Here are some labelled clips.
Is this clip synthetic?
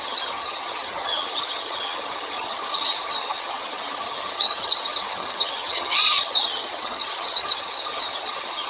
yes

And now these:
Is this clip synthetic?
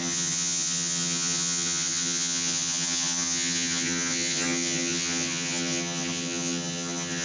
yes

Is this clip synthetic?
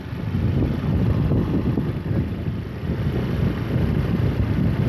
no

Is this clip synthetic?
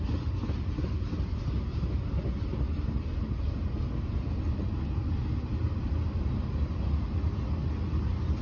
no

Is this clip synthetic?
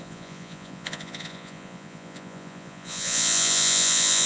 yes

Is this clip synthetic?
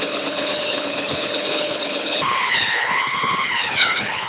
yes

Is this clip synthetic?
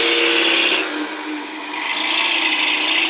no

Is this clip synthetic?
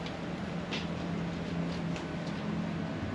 no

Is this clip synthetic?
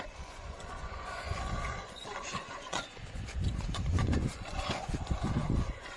yes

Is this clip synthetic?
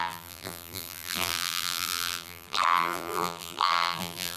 yes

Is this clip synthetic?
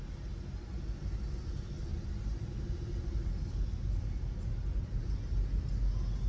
no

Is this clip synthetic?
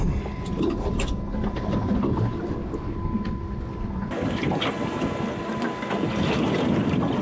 no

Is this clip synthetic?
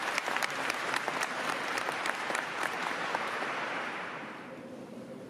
yes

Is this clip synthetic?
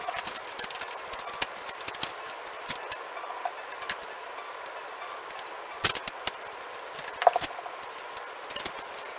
no